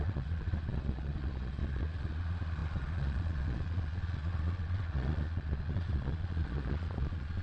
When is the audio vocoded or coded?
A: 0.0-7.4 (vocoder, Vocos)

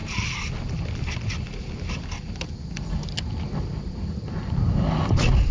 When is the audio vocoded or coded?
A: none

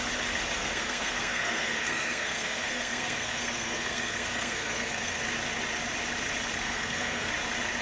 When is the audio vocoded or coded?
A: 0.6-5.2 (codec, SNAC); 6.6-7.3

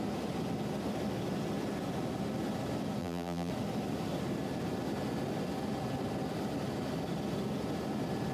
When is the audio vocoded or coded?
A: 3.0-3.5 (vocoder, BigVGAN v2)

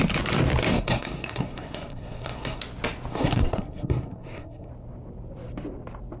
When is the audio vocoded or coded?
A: 0.7-2.6 (codec, SNAC); 3.1-4.7